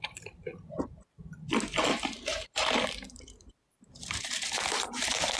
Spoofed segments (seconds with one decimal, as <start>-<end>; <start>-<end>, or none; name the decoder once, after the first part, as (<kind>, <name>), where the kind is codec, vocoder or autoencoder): 0.0-0.5 (vocoder, BigVGAN v2); 1.9-5.4